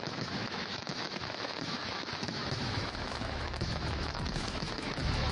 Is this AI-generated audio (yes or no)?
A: yes